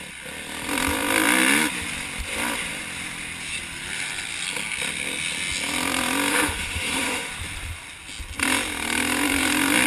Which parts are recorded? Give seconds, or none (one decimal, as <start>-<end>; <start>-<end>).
0.0-6.3; 7.3-9.9